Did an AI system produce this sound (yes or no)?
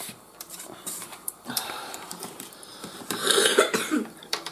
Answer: yes